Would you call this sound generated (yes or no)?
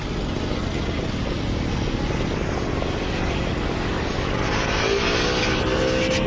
no